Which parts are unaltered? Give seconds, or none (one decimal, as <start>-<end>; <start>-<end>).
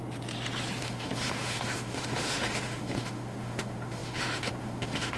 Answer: 0.0-0.8